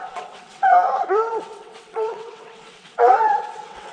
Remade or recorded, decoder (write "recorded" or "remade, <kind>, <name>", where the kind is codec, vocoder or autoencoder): remade, vocoder, WaveNeXt